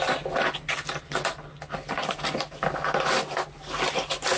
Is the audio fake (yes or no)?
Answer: no